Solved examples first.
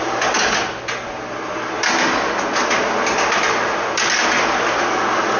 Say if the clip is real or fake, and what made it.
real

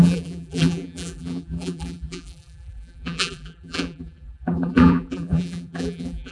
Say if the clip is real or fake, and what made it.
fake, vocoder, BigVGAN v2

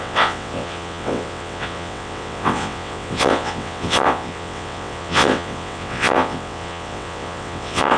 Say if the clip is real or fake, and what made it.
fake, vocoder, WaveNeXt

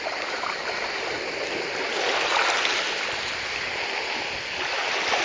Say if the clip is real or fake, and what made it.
real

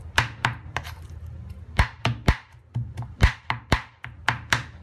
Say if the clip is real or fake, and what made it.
real